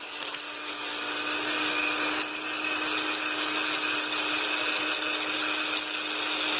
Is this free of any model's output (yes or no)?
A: yes